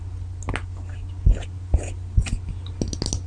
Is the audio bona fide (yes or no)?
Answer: yes